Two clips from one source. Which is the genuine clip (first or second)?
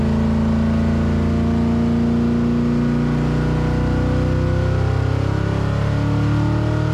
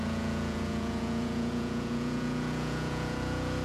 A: first